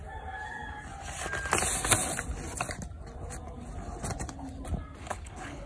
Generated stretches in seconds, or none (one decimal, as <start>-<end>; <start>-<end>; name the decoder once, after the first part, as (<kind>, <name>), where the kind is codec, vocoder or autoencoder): 5.0-5.7 (codec, HILCodec)